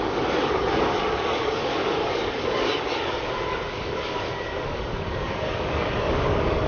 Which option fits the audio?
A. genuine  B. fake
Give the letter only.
B